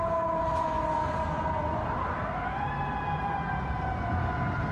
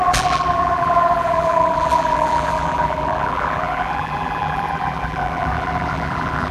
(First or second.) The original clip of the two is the first